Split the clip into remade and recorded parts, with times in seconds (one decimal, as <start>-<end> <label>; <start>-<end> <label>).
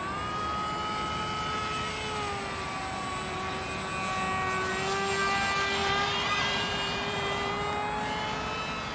0.0-5.8 recorded; 5.8-7.5 remade; 7.5-8.9 recorded